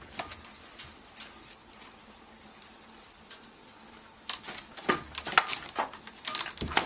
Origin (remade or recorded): recorded